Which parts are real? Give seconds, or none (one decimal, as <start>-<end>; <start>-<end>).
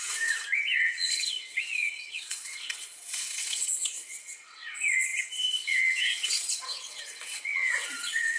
none